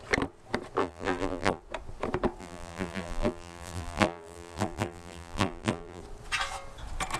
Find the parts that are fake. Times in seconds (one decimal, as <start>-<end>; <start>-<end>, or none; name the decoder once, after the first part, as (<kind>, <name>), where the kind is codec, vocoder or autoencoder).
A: 0.8-1.6 (vocoder, BigVGAN v2); 2.4-6.0